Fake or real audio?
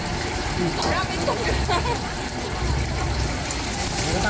real